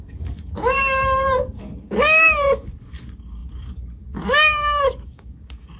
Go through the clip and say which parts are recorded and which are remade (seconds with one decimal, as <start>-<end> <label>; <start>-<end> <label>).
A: 0.0-5.8 remade